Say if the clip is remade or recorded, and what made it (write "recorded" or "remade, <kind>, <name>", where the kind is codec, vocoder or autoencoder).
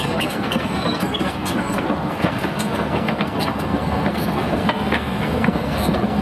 remade, codec, SNAC